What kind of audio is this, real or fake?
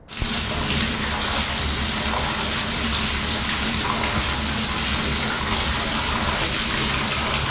real